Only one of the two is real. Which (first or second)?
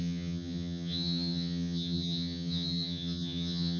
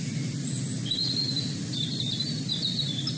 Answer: second